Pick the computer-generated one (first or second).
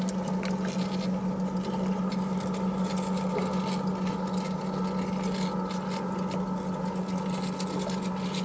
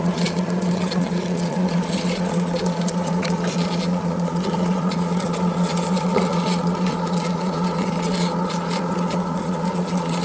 second